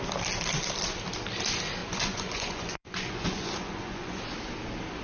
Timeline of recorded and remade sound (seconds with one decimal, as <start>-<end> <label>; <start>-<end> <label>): 0.0-1.8 recorded; 1.8-4.2 remade; 4.2-5.0 recorded